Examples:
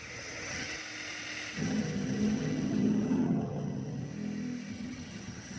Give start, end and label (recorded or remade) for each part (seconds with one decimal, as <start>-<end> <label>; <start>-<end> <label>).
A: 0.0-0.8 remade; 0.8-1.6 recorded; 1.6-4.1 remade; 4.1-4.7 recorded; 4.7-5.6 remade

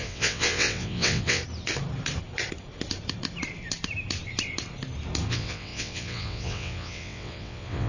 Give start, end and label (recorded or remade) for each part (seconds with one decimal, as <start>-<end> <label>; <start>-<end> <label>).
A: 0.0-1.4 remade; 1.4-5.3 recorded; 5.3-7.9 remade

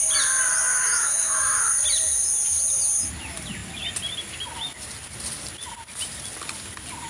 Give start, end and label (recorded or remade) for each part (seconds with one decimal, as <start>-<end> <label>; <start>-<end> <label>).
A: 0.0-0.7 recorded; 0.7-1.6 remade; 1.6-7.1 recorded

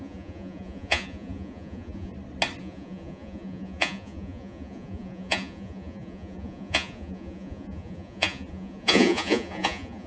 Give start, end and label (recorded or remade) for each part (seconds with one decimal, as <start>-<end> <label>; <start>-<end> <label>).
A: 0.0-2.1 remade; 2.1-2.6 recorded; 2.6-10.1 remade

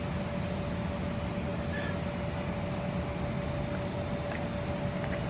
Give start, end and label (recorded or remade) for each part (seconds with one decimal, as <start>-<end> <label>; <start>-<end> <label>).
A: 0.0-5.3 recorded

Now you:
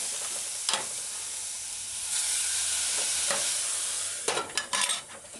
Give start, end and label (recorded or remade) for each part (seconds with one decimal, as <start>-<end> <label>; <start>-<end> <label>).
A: 0.0-5.4 recorded

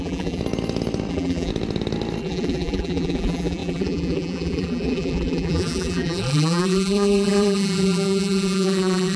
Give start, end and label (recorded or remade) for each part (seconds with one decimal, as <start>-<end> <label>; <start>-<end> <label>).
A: 0.0-0.4 remade; 0.4-1.1 recorded; 1.1-1.5 remade; 1.5-2.2 recorded; 2.2-9.2 remade